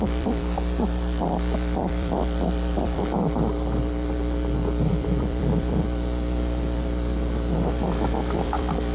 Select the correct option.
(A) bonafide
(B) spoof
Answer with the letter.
B